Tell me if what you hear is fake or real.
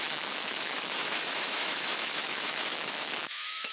fake